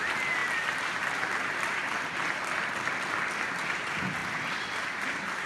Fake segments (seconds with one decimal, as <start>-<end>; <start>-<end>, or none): none